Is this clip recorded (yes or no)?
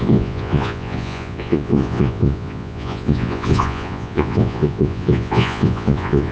no